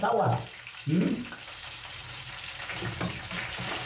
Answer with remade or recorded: remade